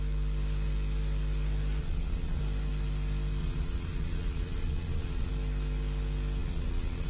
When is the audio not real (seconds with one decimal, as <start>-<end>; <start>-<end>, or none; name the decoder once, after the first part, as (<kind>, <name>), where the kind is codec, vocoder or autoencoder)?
1.8-2.4 (vocoder, Vocos); 3.4-5.3; 6.4-7.1